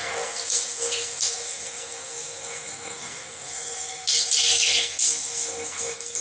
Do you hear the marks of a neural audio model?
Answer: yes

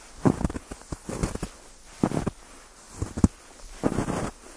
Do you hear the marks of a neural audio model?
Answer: no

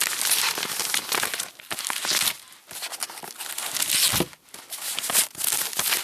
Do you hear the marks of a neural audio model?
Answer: no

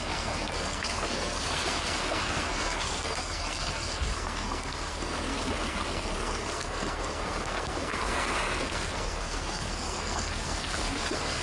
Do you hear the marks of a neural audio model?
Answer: yes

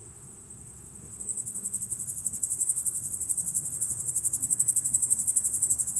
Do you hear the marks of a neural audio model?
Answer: yes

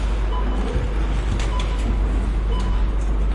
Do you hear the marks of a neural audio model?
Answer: no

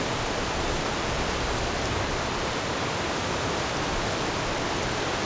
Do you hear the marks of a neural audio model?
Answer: no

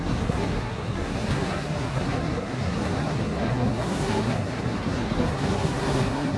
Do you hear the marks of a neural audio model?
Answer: yes